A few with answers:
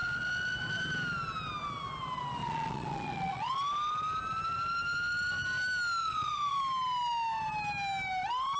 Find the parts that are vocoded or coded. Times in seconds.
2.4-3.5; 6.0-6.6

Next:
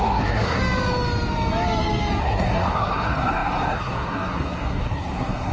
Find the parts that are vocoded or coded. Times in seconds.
0.0-0.6; 2.2-5.5

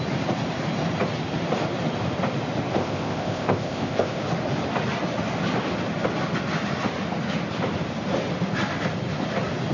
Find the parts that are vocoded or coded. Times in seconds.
2.8-4.2